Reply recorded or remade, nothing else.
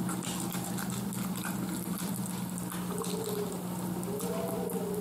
recorded